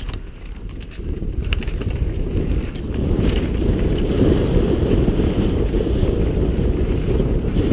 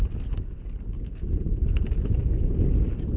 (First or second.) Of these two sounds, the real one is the second